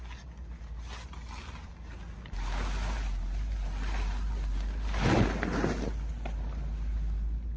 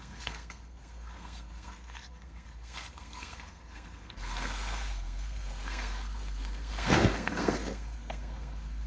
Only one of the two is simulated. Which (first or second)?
second